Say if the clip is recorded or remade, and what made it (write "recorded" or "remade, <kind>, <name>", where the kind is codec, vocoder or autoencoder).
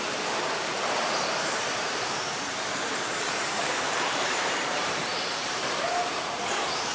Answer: remade, vocoder, BigVGAN v2